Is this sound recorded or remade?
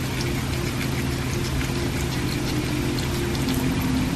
recorded